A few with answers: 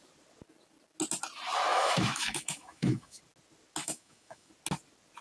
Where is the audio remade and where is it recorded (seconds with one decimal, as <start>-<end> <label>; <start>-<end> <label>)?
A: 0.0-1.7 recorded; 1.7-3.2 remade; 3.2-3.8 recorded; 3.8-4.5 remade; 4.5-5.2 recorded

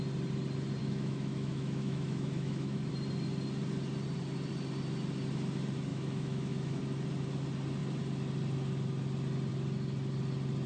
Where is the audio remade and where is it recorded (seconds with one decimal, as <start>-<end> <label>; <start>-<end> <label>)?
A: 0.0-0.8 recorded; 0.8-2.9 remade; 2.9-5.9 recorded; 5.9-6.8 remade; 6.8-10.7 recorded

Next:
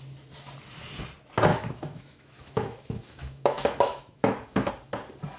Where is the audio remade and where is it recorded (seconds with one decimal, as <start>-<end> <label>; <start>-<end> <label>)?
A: 0.0-1.5 recorded; 1.5-4.7 remade; 4.7-5.4 recorded

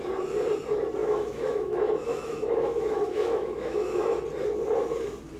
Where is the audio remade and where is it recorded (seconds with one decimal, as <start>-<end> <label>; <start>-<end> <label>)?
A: 0.0-1.0 recorded; 1.0-4.2 remade; 4.2-5.4 recorded

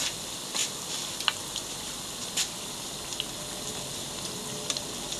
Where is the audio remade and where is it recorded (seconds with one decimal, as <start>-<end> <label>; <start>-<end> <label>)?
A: 0.0-5.2 recorded

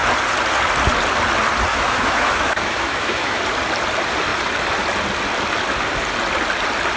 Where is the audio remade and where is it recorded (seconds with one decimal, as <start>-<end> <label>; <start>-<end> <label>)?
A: 0.0-1.7 recorded; 1.7-3.4 remade; 3.4-7.0 recorded

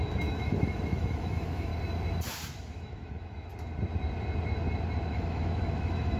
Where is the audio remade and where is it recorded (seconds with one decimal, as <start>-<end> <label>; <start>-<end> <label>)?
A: 0.0-1.7 remade; 1.7-2.6 recorded; 2.6-3.5 remade; 3.5-5.1 recorded; 5.1-6.2 remade

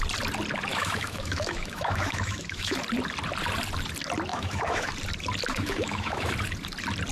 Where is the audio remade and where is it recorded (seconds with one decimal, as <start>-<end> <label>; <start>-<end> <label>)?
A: 0.0-0.7 recorded; 0.7-2.8 remade; 2.8-4.3 recorded; 4.3-4.9 remade; 4.9-5.5 recorded; 5.5-6.3 remade; 6.3-7.1 recorded